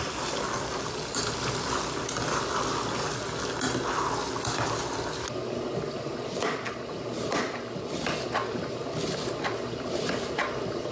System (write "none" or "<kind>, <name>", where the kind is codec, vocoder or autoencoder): none